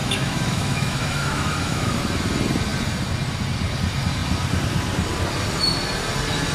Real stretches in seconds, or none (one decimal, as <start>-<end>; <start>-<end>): 1.9-6.5